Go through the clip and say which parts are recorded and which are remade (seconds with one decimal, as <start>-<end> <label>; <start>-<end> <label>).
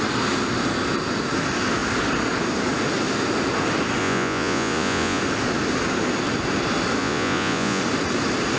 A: 0.0-4.0 recorded; 4.0-5.2 remade; 5.2-7.0 recorded; 7.0-7.8 remade; 7.8-8.6 recorded